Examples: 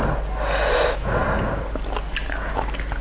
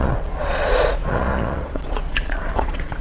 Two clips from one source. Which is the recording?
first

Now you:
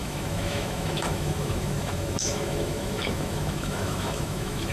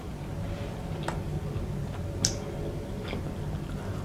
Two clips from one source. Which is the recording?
second